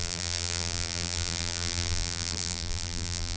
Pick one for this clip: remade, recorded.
remade